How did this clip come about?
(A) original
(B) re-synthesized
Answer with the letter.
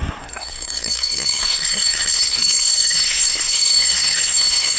B